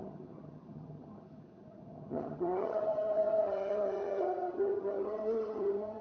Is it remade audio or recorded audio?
remade